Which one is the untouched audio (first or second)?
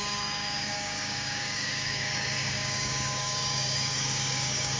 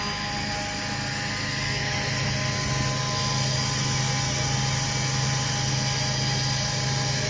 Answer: second